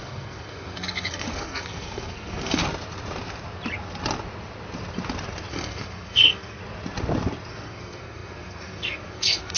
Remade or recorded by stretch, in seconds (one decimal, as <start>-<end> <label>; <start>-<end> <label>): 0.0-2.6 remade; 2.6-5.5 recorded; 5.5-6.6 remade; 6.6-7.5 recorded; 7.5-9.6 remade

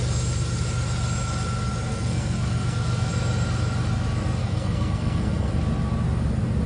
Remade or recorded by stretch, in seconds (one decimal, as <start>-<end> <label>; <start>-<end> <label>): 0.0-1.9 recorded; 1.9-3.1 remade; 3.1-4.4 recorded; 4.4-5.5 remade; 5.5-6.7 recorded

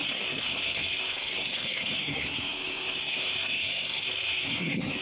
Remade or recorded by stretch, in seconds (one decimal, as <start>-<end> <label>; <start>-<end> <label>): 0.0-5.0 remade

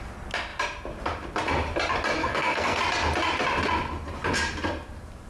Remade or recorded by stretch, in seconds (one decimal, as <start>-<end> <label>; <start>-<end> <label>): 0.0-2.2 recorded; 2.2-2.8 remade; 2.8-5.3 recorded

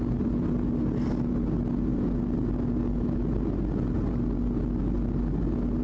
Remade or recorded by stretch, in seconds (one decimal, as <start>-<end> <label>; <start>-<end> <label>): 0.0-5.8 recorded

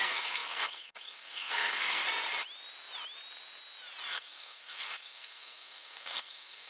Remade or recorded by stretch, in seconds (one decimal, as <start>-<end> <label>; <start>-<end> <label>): 0.0-2.0 remade; 2.0-4.1 recorded; 4.1-6.7 remade

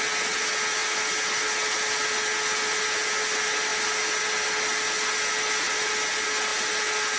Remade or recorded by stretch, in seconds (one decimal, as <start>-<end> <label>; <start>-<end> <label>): 0.0-7.2 recorded

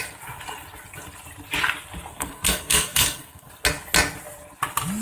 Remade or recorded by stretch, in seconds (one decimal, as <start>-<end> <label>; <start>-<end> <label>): 0.0-2.1 recorded; 2.1-3.5 remade; 3.5-5.0 recorded